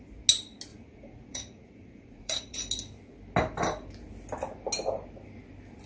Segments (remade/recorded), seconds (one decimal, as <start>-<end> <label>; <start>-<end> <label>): 0.0-0.7 recorded; 0.7-2.6 remade; 2.6-5.9 recorded